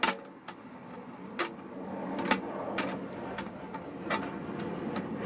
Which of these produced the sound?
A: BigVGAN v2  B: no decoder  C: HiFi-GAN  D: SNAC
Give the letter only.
B